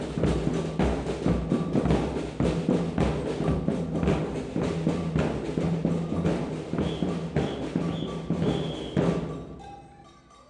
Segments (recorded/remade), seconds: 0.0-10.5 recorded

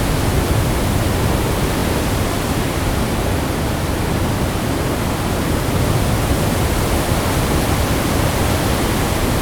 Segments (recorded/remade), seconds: 0.0-9.4 recorded

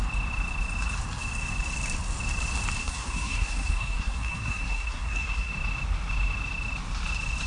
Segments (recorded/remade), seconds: 0.0-2.8 recorded; 2.8-5.5 remade; 5.5-7.5 recorded

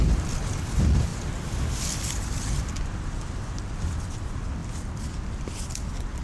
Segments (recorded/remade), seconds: 0.0-6.2 recorded

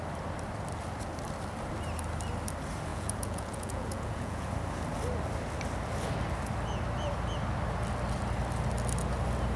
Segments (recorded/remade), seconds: 0.0-2.9 recorded; 2.9-4.5 remade; 4.5-9.6 recorded

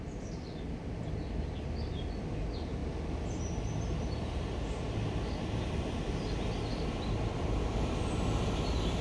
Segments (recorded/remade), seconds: 0.0-6.7 recorded; 6.7-7.4 remade; 7.4-9.0 recorded

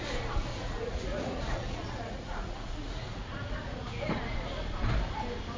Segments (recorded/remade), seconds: 0.0-0.5 recorded; 0.5-3.9 remade; 3.9-5.6 recorded

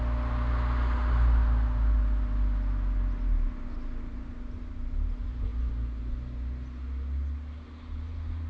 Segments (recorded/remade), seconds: 0.0-8.5 recorded